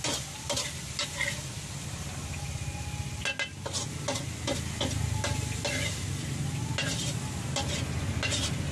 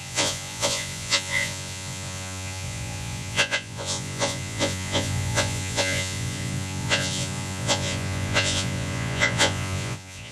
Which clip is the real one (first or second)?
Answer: first